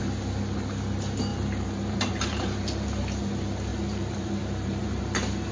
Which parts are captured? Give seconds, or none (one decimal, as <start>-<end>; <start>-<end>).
0.0-1.3; 3.0-3.7; 5.0-5.5